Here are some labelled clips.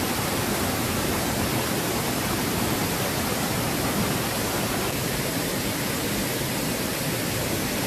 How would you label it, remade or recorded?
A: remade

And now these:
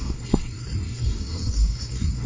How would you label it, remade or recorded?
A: remade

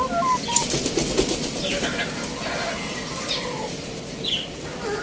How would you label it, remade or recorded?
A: recorded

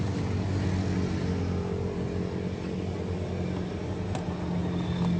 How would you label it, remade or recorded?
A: recorded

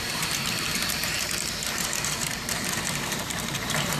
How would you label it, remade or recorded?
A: remade